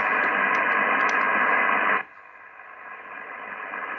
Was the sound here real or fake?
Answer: real